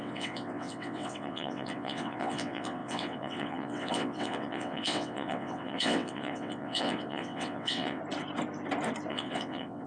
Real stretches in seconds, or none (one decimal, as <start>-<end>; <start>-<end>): 8.0-9.1